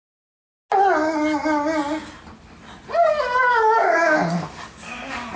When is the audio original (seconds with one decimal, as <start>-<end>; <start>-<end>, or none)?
0.0-3.5